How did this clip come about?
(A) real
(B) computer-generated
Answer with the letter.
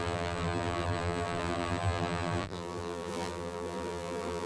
B